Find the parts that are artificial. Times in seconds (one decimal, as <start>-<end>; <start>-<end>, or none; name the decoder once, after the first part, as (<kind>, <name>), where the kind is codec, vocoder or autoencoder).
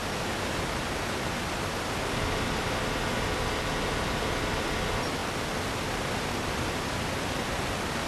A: none